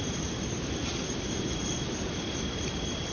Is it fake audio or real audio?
real